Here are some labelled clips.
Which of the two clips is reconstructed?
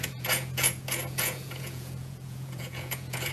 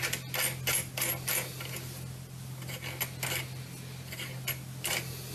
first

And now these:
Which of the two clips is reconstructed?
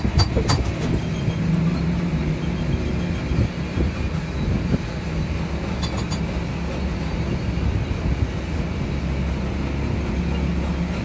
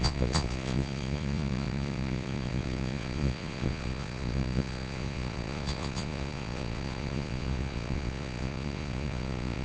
second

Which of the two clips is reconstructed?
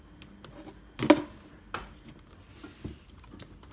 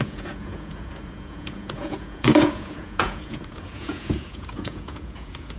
second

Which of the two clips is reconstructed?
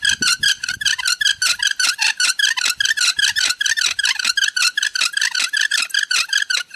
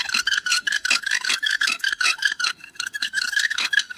second